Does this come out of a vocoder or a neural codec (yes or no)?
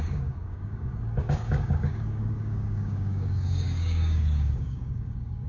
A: yes